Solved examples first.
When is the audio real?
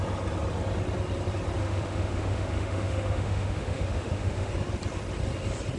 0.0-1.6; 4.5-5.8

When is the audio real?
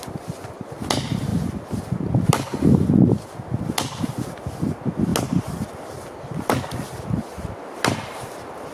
0.0-8.7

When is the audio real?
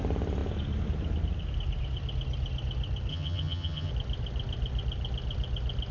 0.0-3.1; 3.9-5.9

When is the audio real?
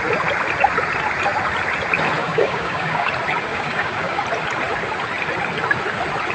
0.0-2.2; 3.1-3.5; 4.2-6.3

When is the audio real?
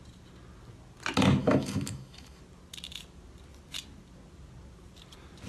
0.0-1.4; 2.4-5.5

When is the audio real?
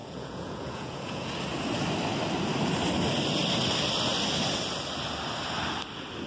1.3-6.3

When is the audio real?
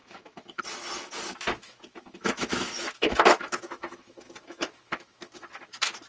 0.6-1.5; 5.2-6.1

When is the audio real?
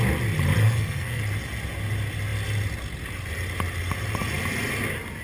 0.0-0.6; 1.2-5.2